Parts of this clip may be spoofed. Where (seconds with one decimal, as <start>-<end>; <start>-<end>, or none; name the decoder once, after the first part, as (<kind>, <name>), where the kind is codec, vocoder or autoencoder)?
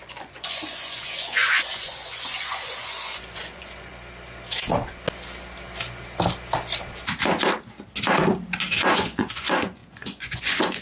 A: 0.0-3.9 (vocoder, Vocos); 8.6-10.8